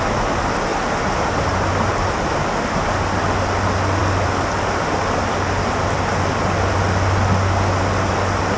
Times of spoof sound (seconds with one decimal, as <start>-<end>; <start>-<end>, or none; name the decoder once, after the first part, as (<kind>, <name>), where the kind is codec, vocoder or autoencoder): 0.7-1.7 (vocoder, BigVGAN v2)